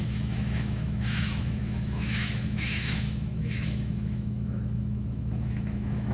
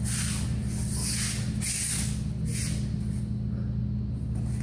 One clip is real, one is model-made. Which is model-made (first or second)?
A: first